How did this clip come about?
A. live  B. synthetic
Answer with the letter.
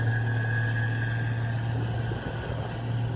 A